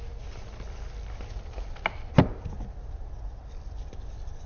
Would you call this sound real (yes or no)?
yes